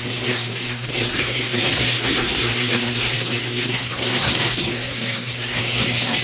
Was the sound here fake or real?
fake